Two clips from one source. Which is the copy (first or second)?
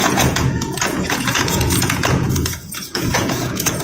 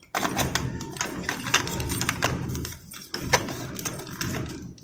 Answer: first